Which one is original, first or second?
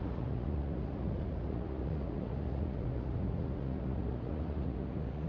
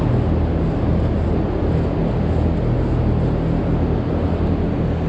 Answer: second